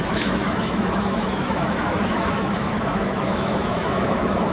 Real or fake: fake